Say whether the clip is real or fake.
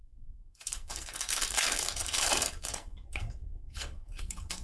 fake